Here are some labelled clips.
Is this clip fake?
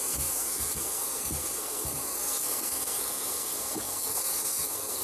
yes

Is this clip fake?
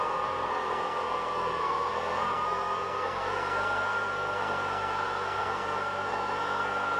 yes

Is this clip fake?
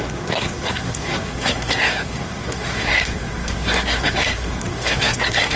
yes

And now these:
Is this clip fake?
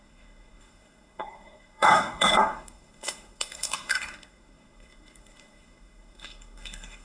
yes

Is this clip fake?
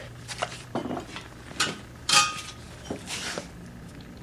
no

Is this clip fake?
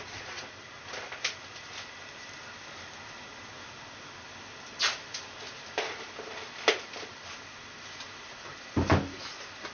no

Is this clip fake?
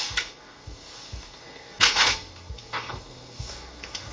yes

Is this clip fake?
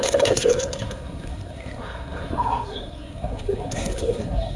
yes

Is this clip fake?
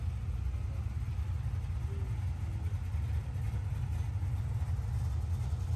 no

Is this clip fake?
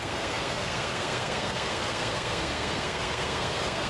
yes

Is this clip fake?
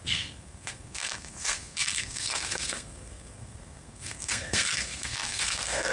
yes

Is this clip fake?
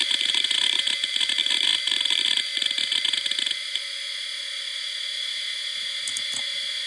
no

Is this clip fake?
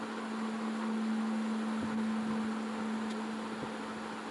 no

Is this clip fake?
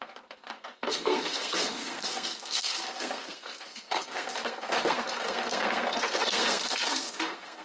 yes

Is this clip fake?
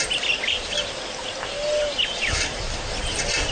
no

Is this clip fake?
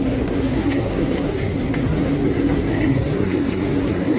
yes